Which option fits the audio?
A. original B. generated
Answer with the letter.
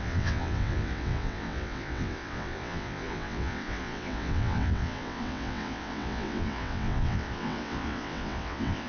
B